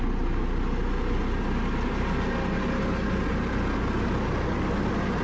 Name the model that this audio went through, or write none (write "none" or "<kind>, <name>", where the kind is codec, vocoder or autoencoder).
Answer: none